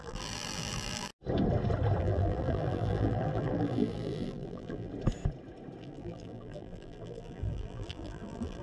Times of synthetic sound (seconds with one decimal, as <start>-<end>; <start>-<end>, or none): 0.0-1.1; 2.0-4.9; 5.8-8.6